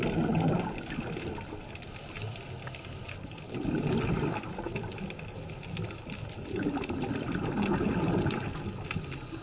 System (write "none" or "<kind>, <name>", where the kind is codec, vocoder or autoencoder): none